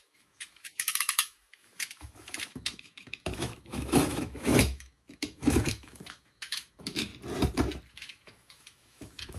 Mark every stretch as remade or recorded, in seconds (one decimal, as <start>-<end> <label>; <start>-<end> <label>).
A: 0.0-7.1 remade; 7.1-7.9 recorded; 7.9-9.4 remade